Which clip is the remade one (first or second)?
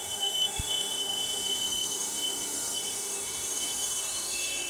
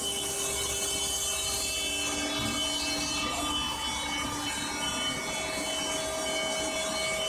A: first